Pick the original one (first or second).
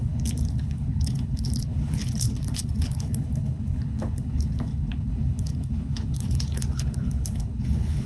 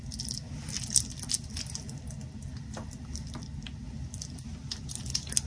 second